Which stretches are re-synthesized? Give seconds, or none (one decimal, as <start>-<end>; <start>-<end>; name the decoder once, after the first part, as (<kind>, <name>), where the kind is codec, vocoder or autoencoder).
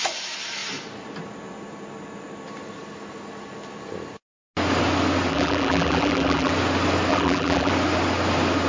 5.3-6.5 (vocoder, BigVGAN v2); 7.1-7.7